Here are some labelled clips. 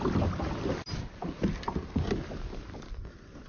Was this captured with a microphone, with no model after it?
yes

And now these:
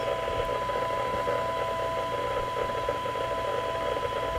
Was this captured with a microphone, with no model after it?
yes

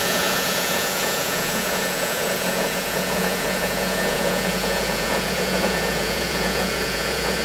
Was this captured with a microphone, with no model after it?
no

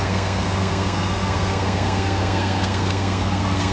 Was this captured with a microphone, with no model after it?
no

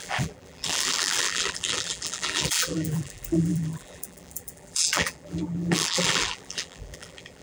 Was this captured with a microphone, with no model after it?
no